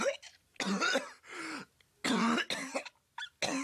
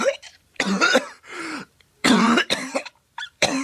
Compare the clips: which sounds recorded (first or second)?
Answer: first